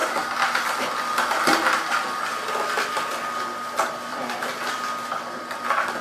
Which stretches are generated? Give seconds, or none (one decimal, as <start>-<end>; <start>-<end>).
4.1-4.8